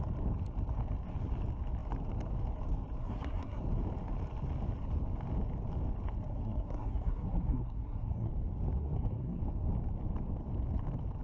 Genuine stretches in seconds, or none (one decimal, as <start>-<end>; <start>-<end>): 0.0-3.0; 3.6-6.3; 8.3-8.8; 9.4-11.2